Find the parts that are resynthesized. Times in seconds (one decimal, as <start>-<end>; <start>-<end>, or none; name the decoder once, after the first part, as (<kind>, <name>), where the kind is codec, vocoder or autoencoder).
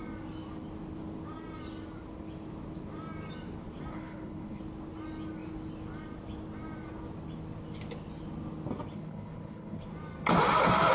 3.9-4.6 (codec, HILCodec); 8.9-9.9